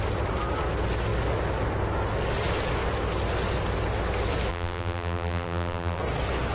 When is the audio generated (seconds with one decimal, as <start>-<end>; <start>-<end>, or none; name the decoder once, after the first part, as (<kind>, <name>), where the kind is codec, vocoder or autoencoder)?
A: 4.5-6.0 (vocoder, BigVGAN v2)